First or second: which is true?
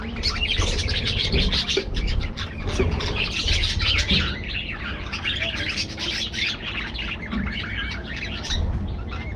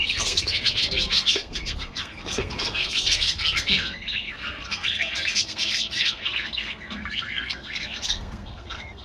first